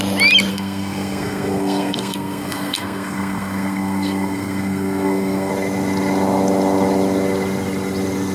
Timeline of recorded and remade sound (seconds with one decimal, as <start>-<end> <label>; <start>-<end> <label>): 0.0-0.5 recorded; 0.5-5.5 remade; 5.5-8.3 recorded